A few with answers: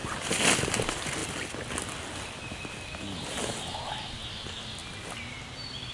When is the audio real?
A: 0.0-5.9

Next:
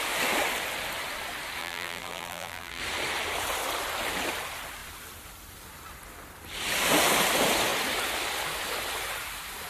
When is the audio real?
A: 0.0-1.6; 2.8-9.7

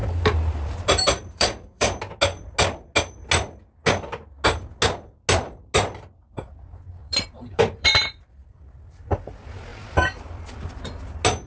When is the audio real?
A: 2.0-7.0; 8.6-9.7; 10.8-11.5

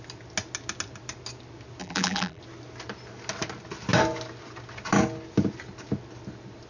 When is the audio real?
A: 0.0-1.8; 2.4-6.7

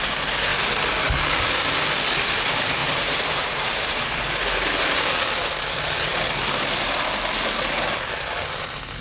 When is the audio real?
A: 0.0-2.8; 4.2-9.0

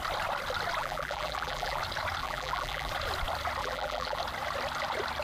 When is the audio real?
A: 0.0-0.8; 1.8-2.2; 2.9-3.6; 4.2-5.2